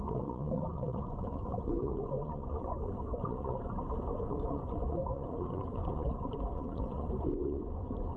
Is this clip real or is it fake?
fake